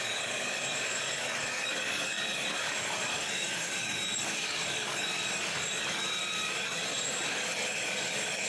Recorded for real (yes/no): no